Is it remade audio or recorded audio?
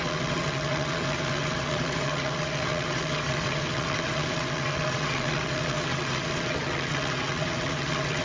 remade